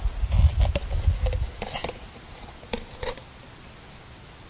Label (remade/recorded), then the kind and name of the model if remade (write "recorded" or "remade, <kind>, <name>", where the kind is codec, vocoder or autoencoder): recorded